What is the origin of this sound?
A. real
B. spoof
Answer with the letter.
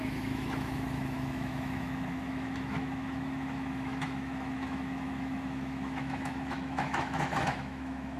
B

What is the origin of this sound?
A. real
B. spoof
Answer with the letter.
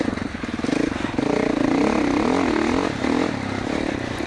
A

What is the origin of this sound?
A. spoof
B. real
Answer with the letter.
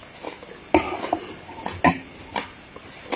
B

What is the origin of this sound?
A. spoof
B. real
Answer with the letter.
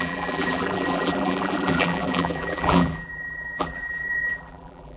A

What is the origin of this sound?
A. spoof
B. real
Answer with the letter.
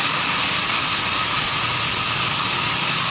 B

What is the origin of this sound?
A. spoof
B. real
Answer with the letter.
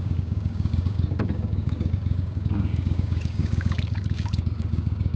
A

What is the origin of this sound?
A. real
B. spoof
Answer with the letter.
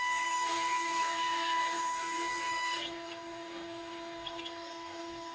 B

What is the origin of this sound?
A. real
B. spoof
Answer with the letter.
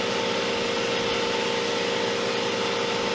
A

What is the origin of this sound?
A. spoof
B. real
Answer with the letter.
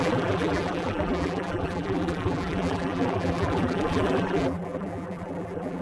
A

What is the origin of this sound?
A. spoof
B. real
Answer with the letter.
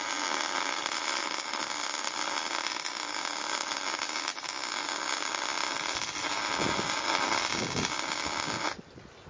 B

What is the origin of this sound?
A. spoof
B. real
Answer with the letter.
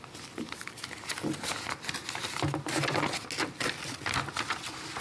B